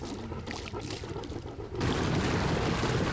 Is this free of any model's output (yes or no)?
yes